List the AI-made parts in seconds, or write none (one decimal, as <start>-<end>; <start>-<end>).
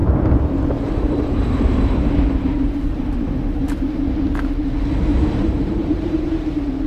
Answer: 0.0-3.0; 5.1-6.2